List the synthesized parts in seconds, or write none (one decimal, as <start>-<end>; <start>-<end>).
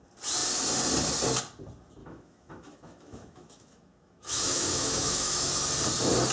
2.0-5.5